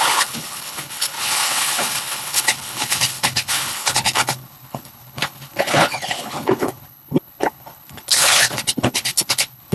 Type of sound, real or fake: fake